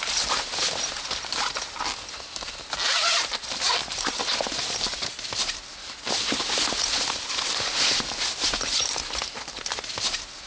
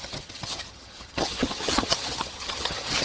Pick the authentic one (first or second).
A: first